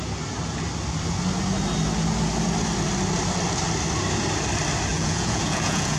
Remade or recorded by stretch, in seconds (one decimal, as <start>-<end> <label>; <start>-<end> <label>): 0.0-4.9 recorded; 4.9-6.0 remade